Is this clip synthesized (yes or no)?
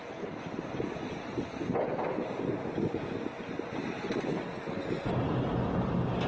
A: no